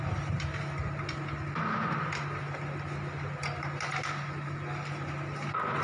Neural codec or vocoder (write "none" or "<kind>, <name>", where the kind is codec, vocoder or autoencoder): none